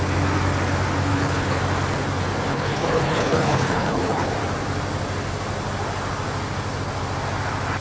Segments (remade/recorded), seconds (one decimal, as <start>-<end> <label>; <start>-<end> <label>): 0.0-1.1 recorded; 1.1-1.6 remade; 1.6-2.5 recorded; 2.5-4.3 remade; 4.3-7.8 recorded